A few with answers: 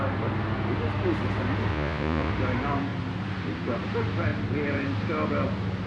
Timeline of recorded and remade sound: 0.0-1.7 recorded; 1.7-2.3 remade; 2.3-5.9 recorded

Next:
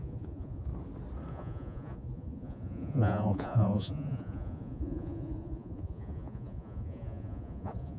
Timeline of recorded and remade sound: 0.0-0.7 remade; 0.7-1.3 recorded; 1.3-8.0 remade

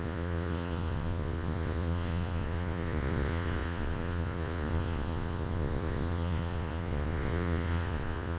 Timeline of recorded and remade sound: 0.0-8.4 remade

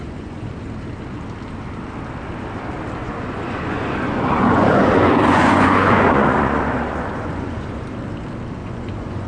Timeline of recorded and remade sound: 0.0-0.5 remade; 0.5-3.0 recorded; 3.0-7.9 remade; 7.9-8.6 recorded; 8.6-9.3 remade

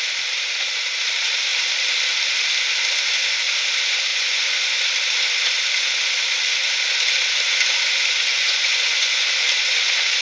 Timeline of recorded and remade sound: 0.0-4.1 recorded; 4.1-4.8 remade; 4.8-8.3 recorded; 8.3-9.2 remade; 9.2-10.2 recorded

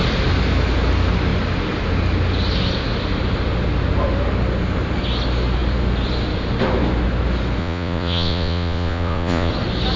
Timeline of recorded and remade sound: 0.0-7.6 recorded; 7.6-9.5 remade; 9.5-10.0 recorded